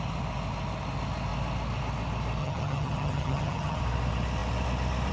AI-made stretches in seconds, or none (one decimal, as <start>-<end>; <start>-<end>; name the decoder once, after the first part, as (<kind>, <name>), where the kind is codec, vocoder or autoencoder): 2.4-3.8 (vocoder, HiFi-GAN)